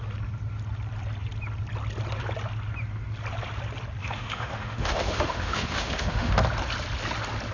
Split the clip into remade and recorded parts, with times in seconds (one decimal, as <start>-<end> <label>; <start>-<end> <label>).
0.0-4.0 recorded; 4.0-6.3 remade; 6.3-7.5 recorded